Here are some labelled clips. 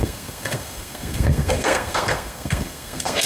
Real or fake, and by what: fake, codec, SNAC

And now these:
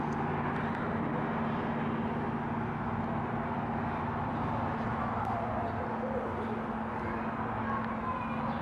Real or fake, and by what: real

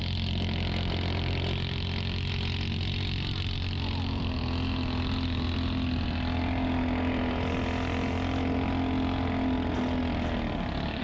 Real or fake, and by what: real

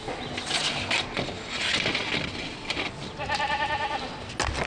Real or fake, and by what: real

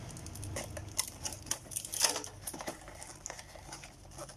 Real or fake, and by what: real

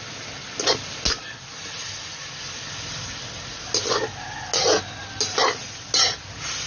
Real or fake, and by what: real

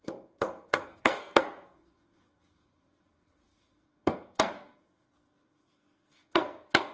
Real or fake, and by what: fake, codec, SNAC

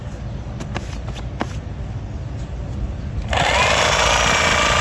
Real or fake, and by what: real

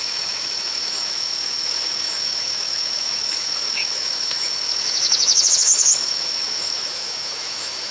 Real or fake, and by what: fake, autoencoder, DAC-VAE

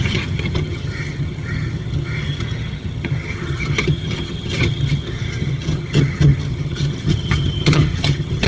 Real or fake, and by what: fake, vocoder, HiFi-GAN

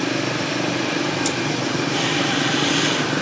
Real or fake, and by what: real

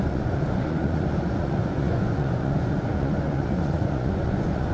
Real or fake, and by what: fake, vocoder, Vocos